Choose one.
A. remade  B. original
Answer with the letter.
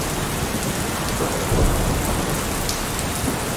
B